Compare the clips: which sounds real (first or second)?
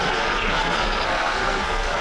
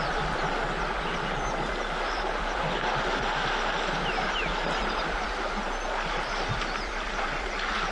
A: second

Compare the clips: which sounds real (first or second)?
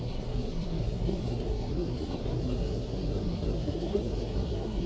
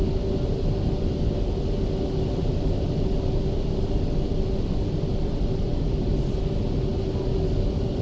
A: second